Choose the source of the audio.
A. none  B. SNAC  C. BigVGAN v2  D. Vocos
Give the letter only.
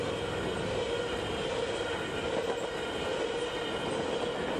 A